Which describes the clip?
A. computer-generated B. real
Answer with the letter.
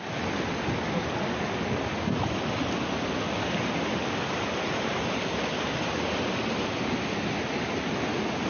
B